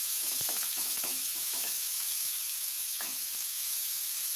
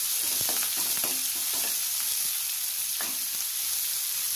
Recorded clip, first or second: second